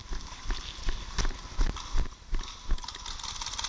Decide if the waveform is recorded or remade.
recorded